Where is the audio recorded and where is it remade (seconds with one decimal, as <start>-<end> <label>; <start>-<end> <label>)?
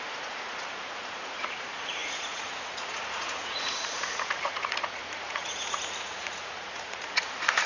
0.0-7.7 remade